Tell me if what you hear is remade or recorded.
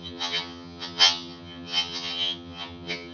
remade